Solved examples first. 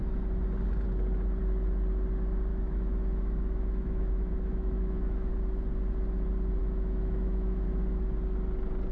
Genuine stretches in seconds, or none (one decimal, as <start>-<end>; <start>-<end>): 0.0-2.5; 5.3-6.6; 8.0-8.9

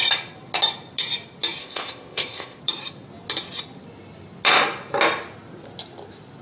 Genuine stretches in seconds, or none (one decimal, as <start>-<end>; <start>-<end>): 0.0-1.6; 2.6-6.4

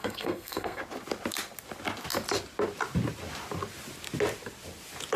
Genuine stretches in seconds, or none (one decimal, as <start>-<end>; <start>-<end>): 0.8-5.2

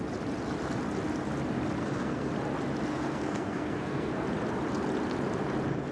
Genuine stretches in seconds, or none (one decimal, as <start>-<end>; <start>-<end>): 0.0-1.8; 2.3-2.9; 4.1-5.9

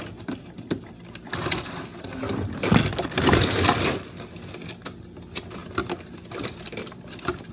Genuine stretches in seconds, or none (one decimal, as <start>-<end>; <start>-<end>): 0.0-5.6